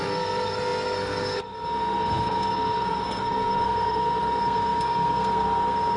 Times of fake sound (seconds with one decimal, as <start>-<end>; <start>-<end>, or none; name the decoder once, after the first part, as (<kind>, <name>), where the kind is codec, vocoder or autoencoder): 0.0-6.0 (codec, SNAC)